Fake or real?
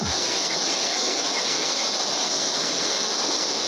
fake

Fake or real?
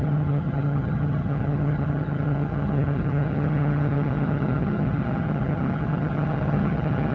fake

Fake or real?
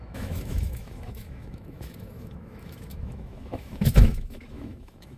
fake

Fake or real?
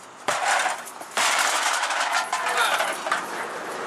real